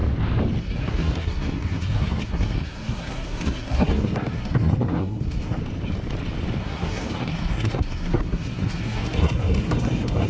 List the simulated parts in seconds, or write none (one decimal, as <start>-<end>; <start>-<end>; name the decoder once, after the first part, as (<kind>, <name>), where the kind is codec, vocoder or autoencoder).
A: 0.6-5.6 (codec, SNAC); 6.6-10.3